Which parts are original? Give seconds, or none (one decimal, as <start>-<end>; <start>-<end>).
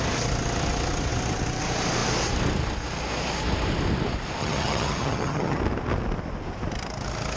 0.0-4.4; 5.6-7.4